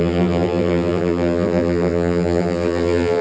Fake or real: fake